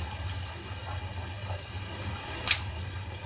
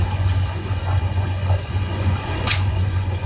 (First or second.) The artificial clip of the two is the second